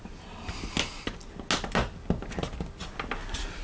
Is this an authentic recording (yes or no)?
yes